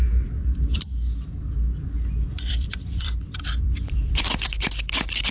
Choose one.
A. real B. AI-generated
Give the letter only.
B